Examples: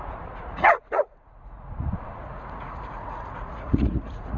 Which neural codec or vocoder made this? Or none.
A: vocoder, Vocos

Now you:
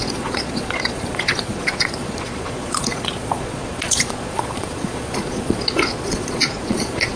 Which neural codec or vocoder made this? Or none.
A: vocoder, Vocos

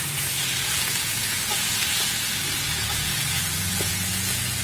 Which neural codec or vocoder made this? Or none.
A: vocoder, Vocos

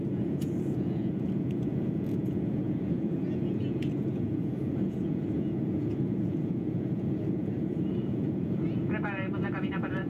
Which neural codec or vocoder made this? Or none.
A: vocoder, Vocos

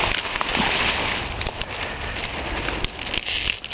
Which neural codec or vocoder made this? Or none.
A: none